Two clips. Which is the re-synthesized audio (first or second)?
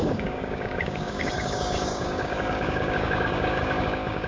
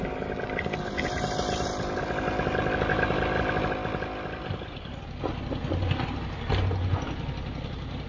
first